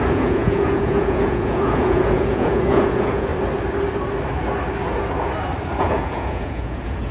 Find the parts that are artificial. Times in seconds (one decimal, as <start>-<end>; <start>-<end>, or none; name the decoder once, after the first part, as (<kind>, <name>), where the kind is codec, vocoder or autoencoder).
0.0-3.3 (vocoder, Vocos); 5.8-7.1